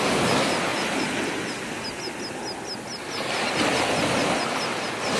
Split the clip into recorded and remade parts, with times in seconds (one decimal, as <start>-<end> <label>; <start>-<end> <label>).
0.0-5.2 recorded